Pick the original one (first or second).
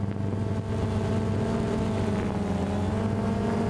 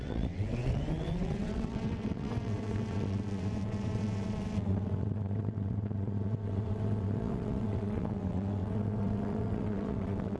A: first